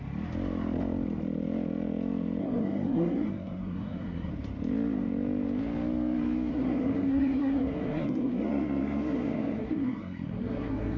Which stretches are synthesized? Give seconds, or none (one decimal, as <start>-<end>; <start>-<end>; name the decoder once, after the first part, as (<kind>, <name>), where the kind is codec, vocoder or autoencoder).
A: 2.4-4.3 (codec, SNAC); 6.5-11.0